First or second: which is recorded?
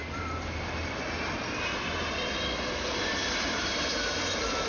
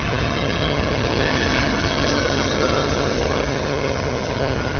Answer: first